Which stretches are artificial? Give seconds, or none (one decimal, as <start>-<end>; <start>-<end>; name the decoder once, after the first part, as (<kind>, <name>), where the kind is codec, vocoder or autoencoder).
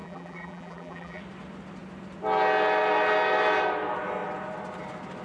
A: 0.0-1.2 (vocoder, BigVGAN v2)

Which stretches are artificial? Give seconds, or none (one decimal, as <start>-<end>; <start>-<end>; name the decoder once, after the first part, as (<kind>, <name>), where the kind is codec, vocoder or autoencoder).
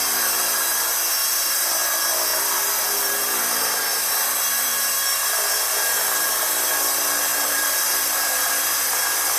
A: 1.2-1.7 (vocoder, BigVGAN v2); 7.3-8.5